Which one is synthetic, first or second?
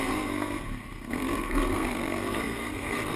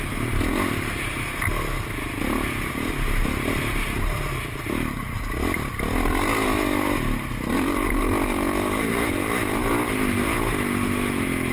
first